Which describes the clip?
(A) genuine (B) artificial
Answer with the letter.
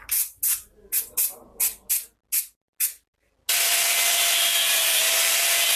A